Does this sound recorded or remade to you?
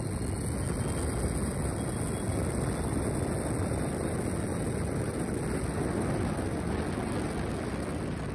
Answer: recorded